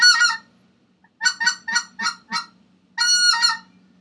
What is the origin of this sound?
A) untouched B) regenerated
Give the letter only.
A